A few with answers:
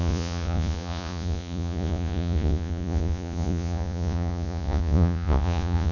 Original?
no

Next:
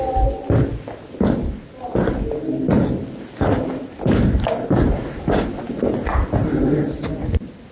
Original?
yes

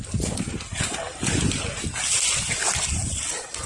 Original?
yes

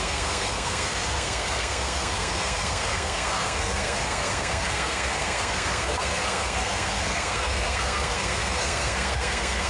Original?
no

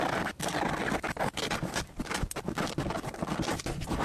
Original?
yes